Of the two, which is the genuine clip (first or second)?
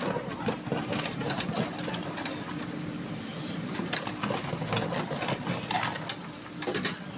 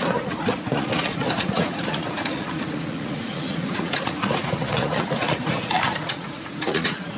first